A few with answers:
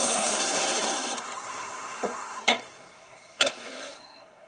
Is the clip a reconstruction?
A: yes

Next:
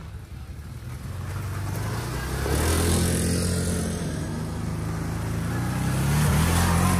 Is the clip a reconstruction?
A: no